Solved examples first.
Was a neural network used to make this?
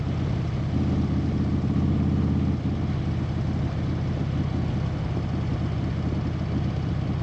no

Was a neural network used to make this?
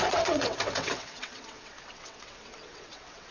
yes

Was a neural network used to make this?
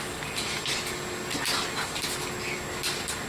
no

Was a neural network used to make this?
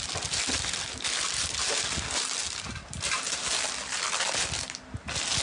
no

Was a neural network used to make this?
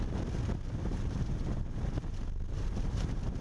no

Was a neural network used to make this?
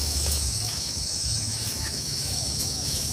yes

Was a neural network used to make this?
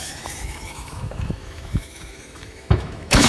yes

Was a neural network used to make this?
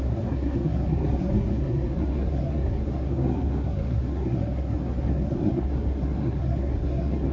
yes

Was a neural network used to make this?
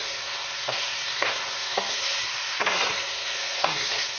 yes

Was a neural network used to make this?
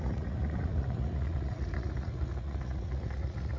yes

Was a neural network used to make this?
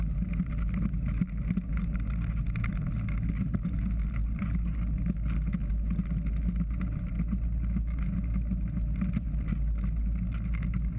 no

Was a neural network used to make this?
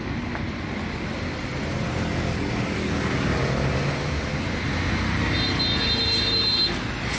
no